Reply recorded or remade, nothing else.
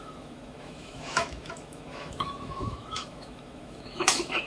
remade